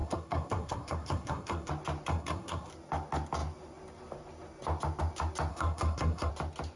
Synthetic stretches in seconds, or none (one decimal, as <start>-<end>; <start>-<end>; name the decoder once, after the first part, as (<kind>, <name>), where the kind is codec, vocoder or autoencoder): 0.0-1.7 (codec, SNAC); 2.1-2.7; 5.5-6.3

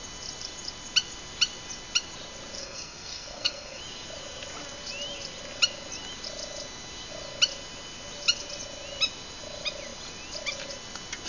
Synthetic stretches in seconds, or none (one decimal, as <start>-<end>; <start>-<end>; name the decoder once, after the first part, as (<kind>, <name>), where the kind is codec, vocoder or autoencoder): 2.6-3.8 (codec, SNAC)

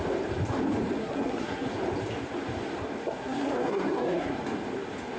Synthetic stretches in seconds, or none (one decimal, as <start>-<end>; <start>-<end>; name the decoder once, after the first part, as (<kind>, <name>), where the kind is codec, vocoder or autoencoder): 1.0-1.7 (codec, SNAC); 3.0-4.4

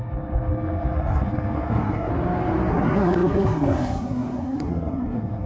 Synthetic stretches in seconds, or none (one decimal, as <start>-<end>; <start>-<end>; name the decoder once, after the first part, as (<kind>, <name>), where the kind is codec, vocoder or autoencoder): 0.0-2.1 (codec, SNAC); 2.7-5.5